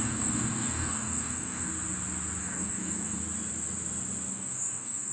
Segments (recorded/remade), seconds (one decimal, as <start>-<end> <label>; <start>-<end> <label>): 0.0-1.7 remade; 1.7-2.4 recorded; 2.4-3.2 remade; 3.2-4.3 recorded; 4.3-5.1 remade